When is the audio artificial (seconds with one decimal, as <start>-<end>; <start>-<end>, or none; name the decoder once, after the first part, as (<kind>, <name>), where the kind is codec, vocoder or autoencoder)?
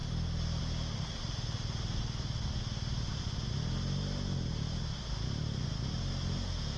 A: none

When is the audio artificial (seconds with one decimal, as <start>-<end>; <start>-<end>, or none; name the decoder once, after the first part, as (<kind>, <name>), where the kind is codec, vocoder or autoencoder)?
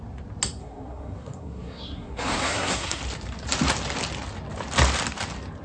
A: 0.6-3.0 (codec, SNAC)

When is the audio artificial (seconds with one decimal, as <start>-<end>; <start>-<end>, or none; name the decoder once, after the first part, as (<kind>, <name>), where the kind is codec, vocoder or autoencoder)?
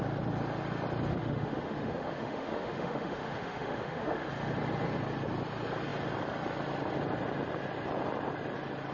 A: 1.1-4.3 (autoencoder, DAC-VAE)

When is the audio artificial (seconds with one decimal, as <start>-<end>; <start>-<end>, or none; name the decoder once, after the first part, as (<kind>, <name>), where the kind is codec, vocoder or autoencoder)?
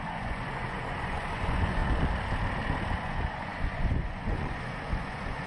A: 0.0-1.8 (vocoder, Vocos); 3.0-5.5